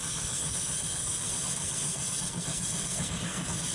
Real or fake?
fake